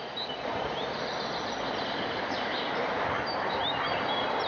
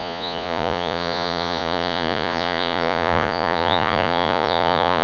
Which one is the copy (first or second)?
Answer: second